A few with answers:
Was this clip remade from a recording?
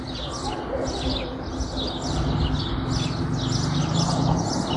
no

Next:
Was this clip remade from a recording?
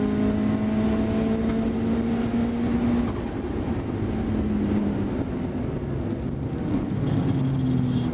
no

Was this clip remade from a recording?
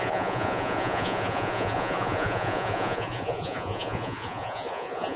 yes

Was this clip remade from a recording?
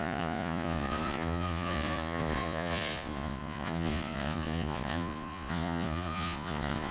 yes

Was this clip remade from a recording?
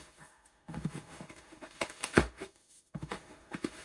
yes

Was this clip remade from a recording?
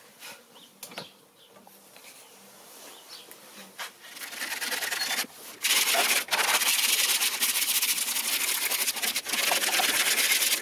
no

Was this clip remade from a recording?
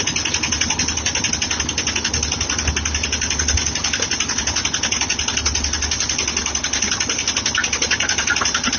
no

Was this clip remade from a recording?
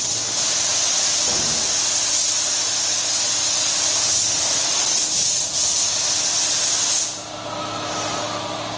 no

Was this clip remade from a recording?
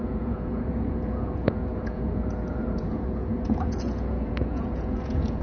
yes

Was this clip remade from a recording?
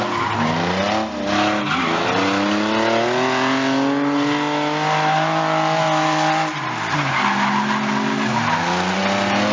no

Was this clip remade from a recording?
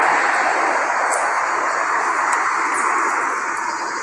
no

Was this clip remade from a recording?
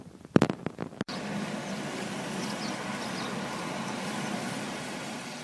no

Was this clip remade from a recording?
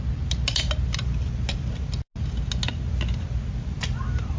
no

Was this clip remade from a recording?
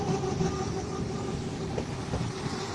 no